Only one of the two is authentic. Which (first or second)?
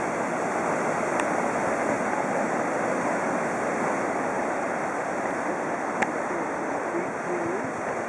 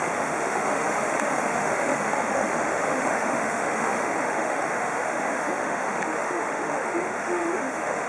first